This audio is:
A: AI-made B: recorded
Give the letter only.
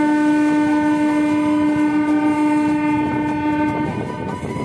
B